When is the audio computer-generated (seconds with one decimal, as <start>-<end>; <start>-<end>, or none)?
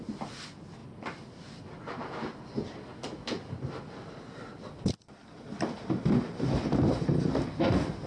none